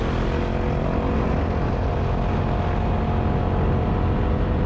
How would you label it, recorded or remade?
recorded